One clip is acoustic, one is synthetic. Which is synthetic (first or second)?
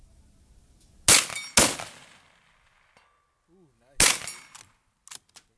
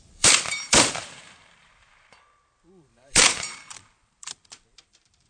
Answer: second